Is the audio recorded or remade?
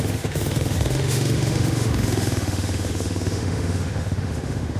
remade